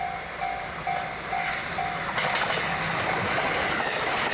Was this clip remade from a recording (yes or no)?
no